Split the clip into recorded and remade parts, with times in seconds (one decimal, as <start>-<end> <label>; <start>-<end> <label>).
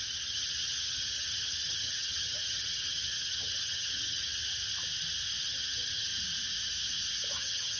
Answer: 0.0-4.6 remade; 4.6-5.4 recorded; 5.4-6.1 remade; 6.1-7.3 recorded; 7.3-7.8 remade